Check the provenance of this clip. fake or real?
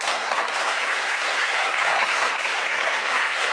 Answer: fake